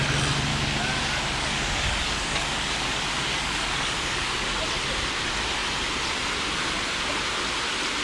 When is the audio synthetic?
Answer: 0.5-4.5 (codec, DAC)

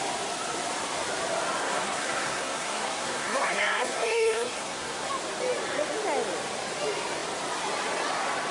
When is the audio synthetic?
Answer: 1.6-5.1 (codec, SNAC)

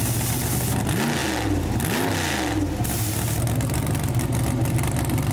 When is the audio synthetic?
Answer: none

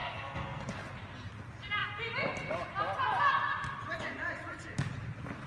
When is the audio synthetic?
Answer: 0.0-0.6 (codec, SNAC)